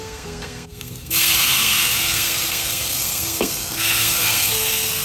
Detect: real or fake fake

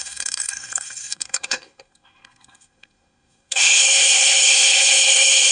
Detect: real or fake fake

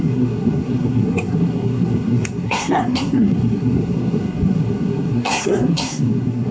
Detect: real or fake fake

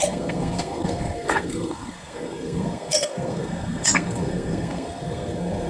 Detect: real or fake fake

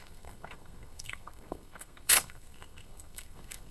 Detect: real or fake fake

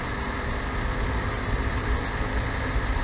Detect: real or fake real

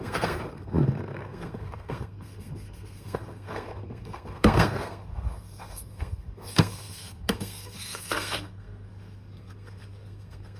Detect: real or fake fake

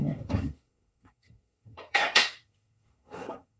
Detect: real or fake fake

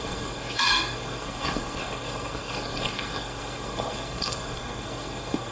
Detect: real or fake fake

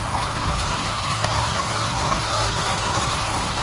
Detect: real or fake fake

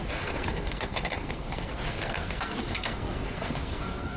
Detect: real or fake fake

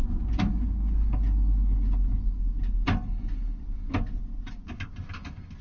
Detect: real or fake real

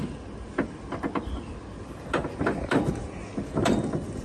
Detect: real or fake real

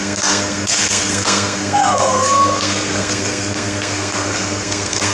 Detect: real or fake fake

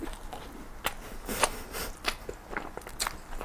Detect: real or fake real